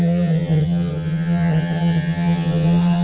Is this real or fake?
fake